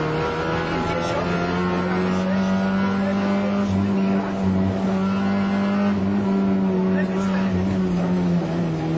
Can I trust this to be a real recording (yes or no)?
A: yes